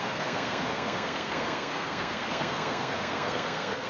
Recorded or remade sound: remade